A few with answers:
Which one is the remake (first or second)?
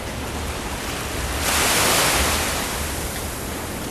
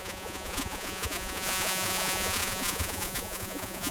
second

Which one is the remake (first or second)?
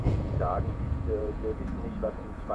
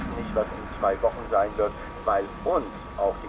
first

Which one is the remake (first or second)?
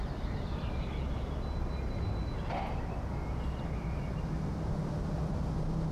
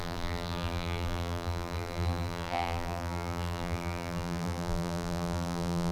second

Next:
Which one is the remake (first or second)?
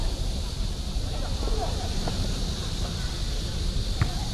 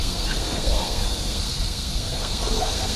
second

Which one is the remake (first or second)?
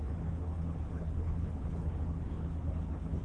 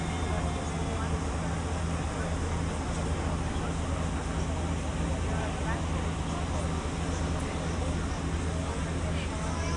first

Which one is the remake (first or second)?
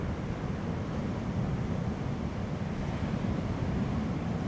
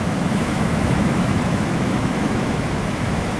second